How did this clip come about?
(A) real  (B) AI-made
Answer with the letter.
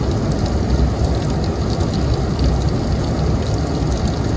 A